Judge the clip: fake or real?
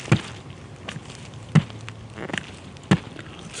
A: real